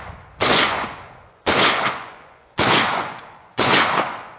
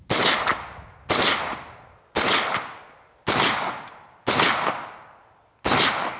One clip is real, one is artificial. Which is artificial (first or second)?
first